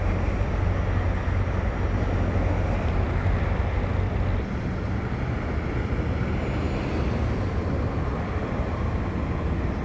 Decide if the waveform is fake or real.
real